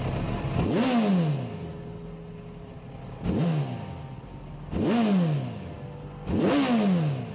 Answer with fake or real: real